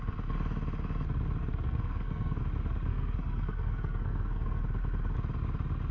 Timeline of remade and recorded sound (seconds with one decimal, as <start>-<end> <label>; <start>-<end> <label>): 0.0-1.4 recorded; 1.4-2.4 remade; 2.4-2.9 recorded; 2.9-4.6 remade; 4.6-5.9 recorded